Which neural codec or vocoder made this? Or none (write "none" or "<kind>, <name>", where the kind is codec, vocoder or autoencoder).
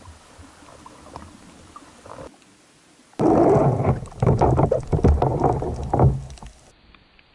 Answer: none